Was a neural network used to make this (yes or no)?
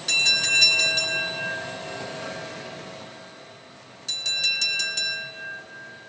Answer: no